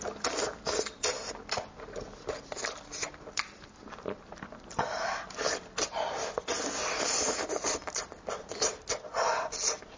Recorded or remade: recorded